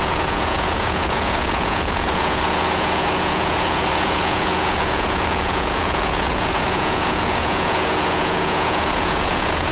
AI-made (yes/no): yes